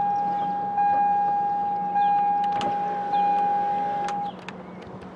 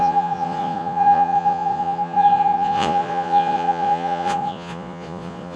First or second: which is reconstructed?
second